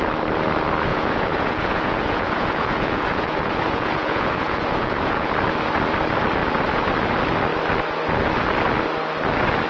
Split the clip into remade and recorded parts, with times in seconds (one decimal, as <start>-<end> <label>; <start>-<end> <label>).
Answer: 0.0-0.9 recorded; 0.9-5.3 remade; 5.3-9.7 recorded